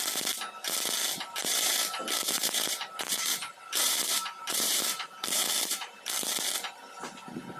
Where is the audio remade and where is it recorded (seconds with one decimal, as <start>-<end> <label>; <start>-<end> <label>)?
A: 0.0-1.4 recorded; 1.4-6.0 remade; 6.0-7.6 recorded